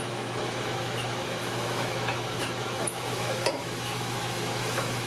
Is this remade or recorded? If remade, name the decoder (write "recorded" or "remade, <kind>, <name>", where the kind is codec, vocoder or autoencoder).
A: remade, autoencoder, DAC-VAE